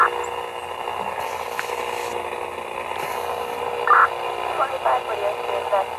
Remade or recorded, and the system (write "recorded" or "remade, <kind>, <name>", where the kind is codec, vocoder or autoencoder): recorded